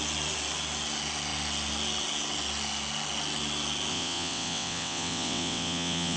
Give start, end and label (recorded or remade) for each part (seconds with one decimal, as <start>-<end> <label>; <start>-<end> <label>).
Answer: 0.0-3.9 recorded; 3.9-6.2 remade